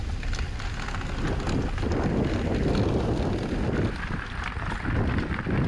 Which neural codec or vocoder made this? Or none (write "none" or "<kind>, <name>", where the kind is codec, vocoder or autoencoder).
none